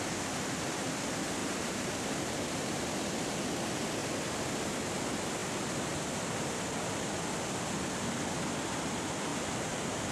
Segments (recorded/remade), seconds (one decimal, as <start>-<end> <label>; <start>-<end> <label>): 0.0-1.4 recorded; 1.4-2.9 remade; 2.9-9.3 recorded; 9.3-10.1 remade

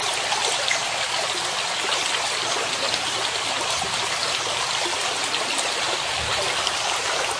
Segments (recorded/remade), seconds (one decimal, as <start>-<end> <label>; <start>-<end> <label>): 0.0-7.4 recorded

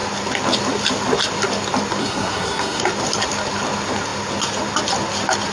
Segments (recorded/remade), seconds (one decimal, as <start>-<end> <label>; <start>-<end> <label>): 0.0-2.0 recorded; 2.0-2.8 remade; 2.8-5.5 recorded

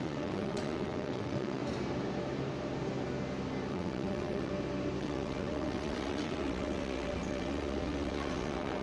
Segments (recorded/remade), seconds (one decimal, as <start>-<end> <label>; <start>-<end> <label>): 0.0-1.6 remade; 1.6-3.7 recorded; 3.7-4.5 remade; 4.5-5.0 recorded; 5.0-8.8 remade

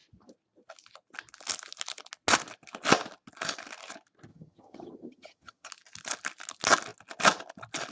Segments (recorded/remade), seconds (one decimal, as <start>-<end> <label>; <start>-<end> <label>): 0.0-4.3 recorded; 4.3-5.7 remade; 5.7-7.9 recorded

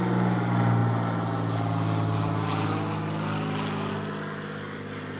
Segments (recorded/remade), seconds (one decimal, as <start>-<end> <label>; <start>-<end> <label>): 0.0-5.2 recorded